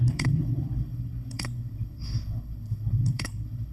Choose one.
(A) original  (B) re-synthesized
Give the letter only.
B